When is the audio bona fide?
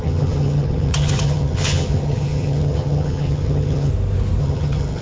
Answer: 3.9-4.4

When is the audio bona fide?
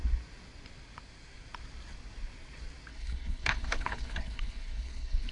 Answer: 0.0-2.9